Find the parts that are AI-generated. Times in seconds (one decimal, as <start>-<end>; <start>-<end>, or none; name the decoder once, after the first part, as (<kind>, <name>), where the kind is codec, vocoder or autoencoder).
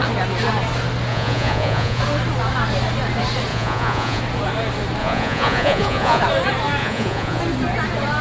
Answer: 1.1-2.0 (vocoder, Vocos); 3.5-4.2; 5.0-6.2; 6.8-7.4